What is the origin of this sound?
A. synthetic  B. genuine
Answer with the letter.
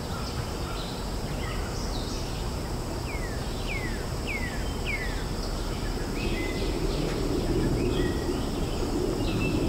B